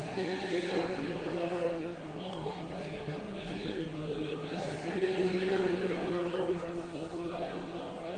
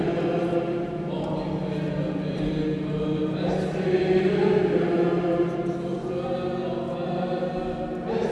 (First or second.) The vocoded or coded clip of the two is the first